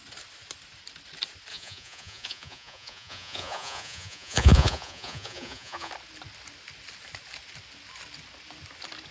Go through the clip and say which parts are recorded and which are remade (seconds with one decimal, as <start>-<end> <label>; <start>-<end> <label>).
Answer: 0.0-1.5 recorded; 1.5-5.9 remade; 5.9-9.1 recorded